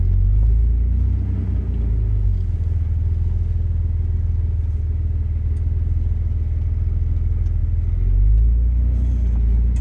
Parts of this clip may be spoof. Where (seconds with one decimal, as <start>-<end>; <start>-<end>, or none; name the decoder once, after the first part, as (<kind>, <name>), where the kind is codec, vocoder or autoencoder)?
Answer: none